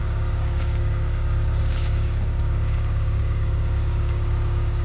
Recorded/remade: remade